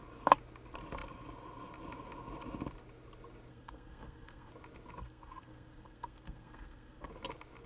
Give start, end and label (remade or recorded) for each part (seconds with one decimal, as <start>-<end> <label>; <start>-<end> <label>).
0.0-3.5 recorded; 3.5-4.5 remade; 4.5-5.0 recorded; 5.0-7.1 remade; 7.1-7.7 recorded